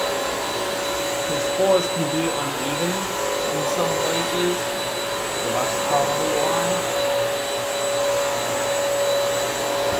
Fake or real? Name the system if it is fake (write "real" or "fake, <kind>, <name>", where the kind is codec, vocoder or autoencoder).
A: real